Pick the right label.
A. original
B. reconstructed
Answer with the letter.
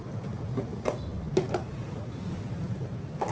A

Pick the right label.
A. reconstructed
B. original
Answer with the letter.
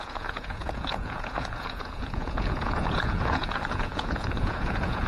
A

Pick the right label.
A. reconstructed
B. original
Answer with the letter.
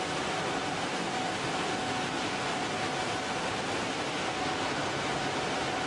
B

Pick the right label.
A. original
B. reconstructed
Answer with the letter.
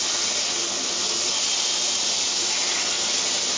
A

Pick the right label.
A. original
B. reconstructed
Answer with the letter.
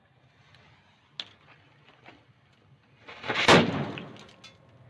A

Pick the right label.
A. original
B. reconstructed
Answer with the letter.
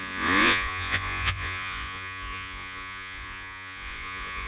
B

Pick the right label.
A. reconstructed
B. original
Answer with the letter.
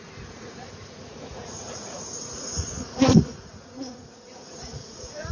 A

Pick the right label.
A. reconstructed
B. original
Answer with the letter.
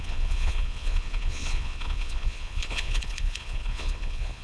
A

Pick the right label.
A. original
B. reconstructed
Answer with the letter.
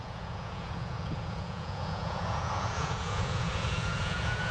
B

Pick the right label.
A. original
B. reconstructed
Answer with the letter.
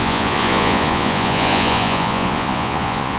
B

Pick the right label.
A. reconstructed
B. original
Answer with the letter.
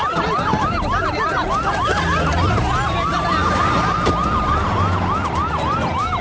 B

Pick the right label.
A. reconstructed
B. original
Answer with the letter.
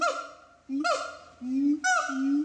B